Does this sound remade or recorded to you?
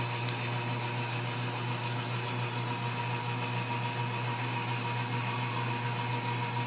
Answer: recorded